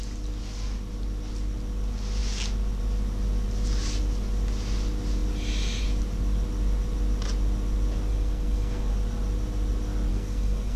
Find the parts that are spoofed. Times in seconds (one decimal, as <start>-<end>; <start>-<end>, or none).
8.1-8.9; 10.1-10.8